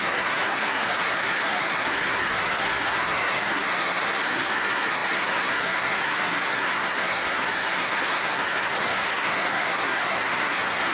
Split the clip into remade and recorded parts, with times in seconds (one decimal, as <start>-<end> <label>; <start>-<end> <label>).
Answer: 0.0-10.9 remade